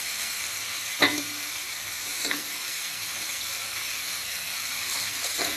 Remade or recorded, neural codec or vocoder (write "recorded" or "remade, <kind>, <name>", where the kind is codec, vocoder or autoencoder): remade, codec, SNAC